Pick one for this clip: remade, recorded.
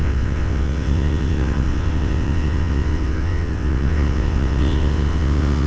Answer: remade